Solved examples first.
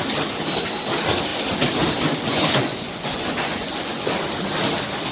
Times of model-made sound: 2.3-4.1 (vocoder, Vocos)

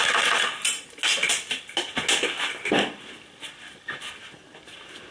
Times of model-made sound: none

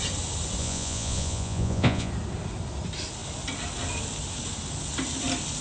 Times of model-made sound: 0.6-2.1 (vocoder, Vocos)

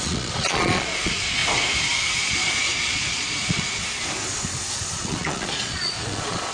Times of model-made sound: 0.0-1.4 (vocoder, Vocos); 2.3-3.8; 5.0-6.5

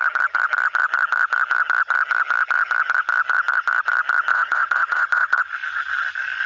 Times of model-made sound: 4.3-5.4 (vocoder, Vocos)

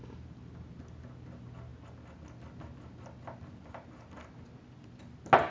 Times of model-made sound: none